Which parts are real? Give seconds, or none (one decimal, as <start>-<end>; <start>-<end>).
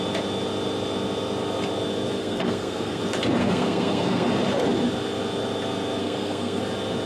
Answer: 0.0-2.2; 3.0-3.4; 4.3-6.0; 6.6-7.1